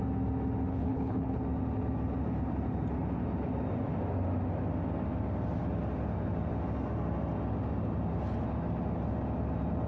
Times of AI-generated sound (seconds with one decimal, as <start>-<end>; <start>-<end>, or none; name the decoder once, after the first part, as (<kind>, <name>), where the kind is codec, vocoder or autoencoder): 0.7-1.4 (codec, HILCodec)